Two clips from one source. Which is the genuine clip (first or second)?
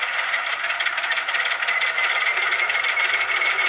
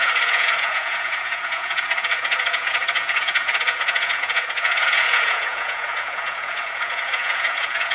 first